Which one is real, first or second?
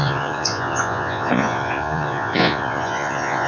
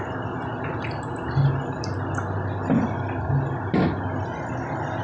second